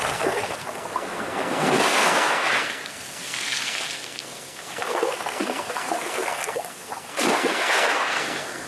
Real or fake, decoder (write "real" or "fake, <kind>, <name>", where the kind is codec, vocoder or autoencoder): fake, codec, SNAC